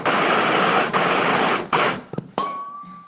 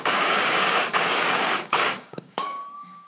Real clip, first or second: first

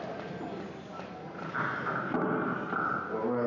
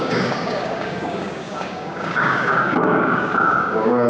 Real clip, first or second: first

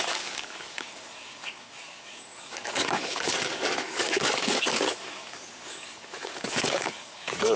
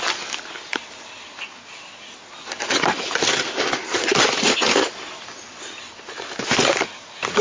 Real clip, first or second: second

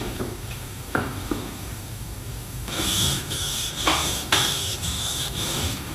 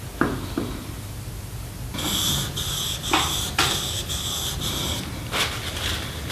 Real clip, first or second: second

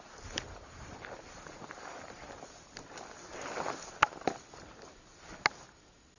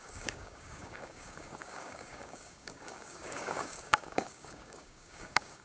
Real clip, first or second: first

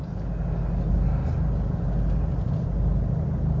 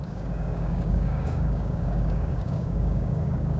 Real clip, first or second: first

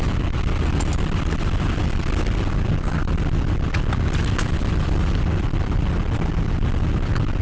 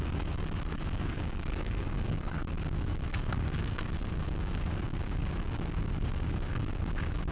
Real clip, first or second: first